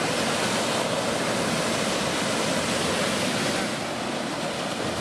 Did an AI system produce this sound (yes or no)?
no